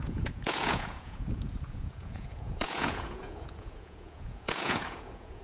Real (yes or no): no